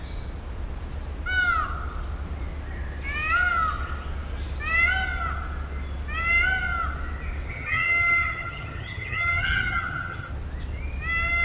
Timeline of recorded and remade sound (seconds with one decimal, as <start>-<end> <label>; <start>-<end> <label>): 0.0-7.5 recorded; 7.5-10.3 remade; 10.3-11.4 recorded